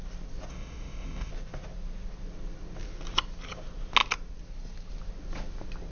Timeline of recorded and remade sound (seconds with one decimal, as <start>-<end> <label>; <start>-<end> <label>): 0.0-0.5 recorded; 0.5-1.3 remade; 1.3-5.9 recorded